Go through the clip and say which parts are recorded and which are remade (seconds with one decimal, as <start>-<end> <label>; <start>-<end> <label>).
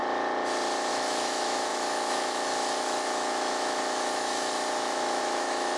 0.0-0.9 recorded; 0.9-5.8 remade